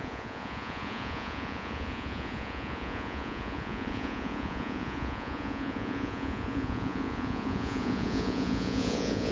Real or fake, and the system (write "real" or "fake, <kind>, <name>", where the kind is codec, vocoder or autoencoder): fake, vocoder, Vocos